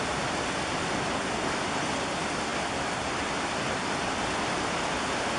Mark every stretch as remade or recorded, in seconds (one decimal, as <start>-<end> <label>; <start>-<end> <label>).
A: 0.0-5.4 recorded